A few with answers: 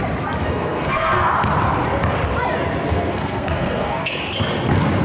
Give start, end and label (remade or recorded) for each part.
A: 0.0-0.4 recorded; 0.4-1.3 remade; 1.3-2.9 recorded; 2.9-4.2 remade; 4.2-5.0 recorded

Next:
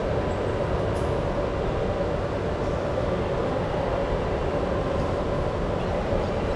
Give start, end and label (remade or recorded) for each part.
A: 0.0-6.6 recorded

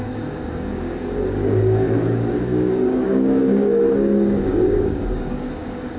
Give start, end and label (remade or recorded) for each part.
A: 0.0-6.0 remade

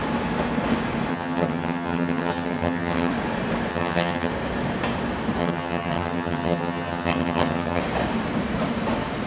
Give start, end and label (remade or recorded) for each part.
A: 0.0-1.1 recorded; 1.1-3.1 remade; 3.1-3.7 recorded; 3.7-4.3 remade; 4.3-5.4 recorded; 5.4-7.8 remade; 7.8-9.3 recorded

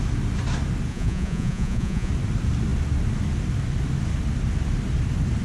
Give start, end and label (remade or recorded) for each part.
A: 0.0-0.9 recorded; 0.9-2.1 remade; 2.1-5.4 recorded

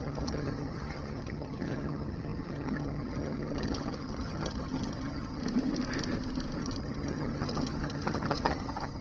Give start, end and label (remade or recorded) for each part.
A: 0.0-5.4 remade; 5.4-6.6 recorded; 6.6-9.0 remade

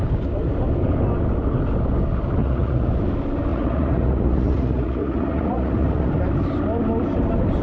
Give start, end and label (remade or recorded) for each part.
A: 0.0-2.4 recorded; 2.4-2.9 remade; 2.9-3.5 recorded; 3.5-6.1 remade; 6.1-7.6 recorded